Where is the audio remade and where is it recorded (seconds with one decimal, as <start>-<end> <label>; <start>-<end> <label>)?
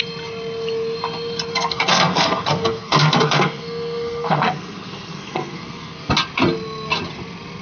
0.0-1.5 recorded; 1.5-6.1 remade; 6.1-7.6 recorded